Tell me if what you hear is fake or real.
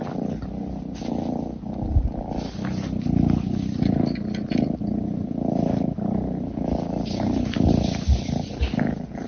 real